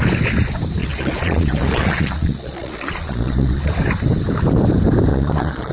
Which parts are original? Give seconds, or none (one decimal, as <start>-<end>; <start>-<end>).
0.0-0.8; 3.7-5.1